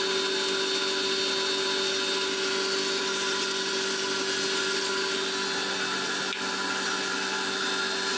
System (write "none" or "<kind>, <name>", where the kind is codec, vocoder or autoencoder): none